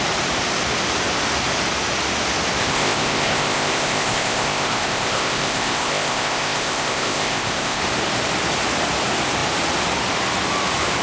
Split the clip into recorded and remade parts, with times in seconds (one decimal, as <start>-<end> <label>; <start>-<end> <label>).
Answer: 0.0-2.6 recorded; 2.6-7.8 remade; 7.8-11.0 recorded